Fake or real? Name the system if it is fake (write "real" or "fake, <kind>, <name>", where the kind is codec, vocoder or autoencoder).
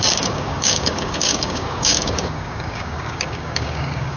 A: fake, codec, DAC